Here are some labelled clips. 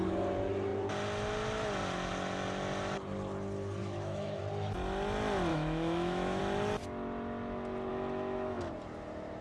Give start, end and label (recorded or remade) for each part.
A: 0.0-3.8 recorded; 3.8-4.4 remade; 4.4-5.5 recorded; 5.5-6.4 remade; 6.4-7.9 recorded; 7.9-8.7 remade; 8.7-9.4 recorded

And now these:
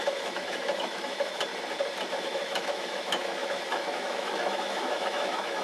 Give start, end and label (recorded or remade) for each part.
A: 0.0-1.5 remade; 1.5-2.1 recorded; 2.1-5.6 remade

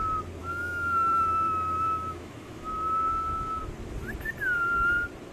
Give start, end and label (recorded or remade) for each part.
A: 0.0-0.4 recorded; 0.4-3.6 remade; 3.6-5.3 recorded

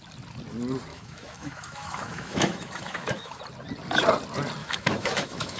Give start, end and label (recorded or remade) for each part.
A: 0.0-0.9 recorded; 0.9-3.4 remade; 3.4-4.6 recorded; 4.6-5.6 remade